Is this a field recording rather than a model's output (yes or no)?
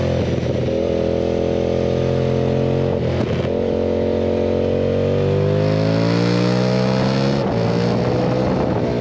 yes